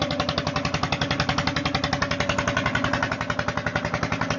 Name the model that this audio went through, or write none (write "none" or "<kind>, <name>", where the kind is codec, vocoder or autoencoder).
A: none